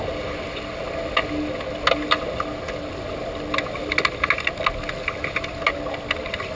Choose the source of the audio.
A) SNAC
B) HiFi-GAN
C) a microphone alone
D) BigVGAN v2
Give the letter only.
C